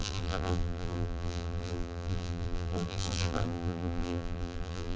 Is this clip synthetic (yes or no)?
yes